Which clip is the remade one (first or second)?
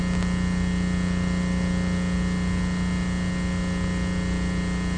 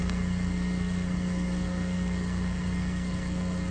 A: second